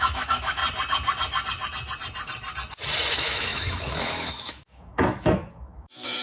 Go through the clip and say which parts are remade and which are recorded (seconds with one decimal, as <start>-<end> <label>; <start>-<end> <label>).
0.0-0.6 remade; 0.6-3.1 recorded; 3.1-6.2 remade